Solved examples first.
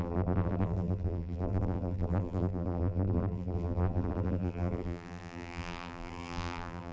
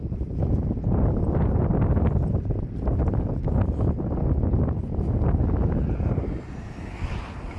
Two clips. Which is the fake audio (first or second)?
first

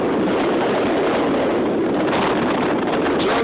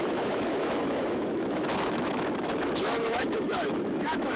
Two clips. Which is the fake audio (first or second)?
second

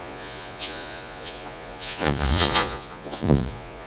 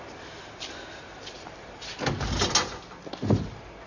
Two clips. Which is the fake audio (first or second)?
first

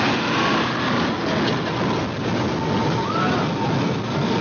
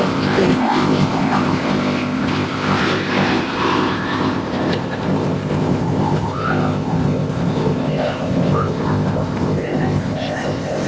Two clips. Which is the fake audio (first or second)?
second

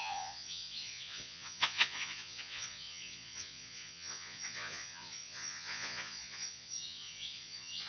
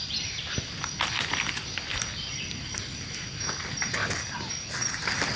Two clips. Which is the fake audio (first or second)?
first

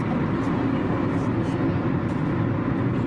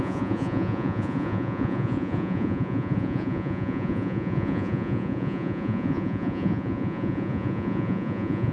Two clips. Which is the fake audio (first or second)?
second